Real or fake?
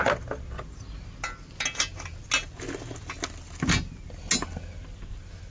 real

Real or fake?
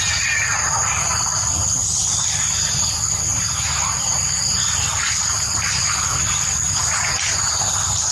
real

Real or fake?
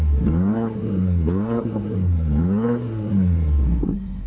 fake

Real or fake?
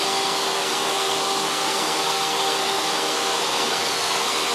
fake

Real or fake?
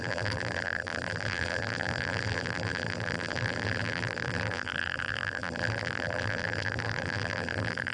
fake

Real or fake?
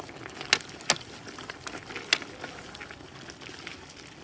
real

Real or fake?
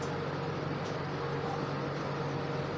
real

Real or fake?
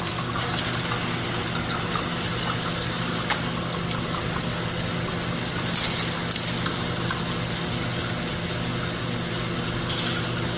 real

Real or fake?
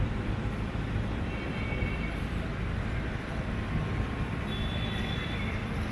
fake